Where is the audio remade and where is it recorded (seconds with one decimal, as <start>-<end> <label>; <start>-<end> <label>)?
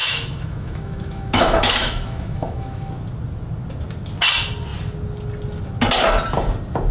0.0-2.9 remade; 2.9-6.9 recorded